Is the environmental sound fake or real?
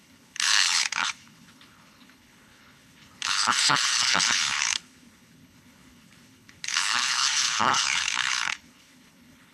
fake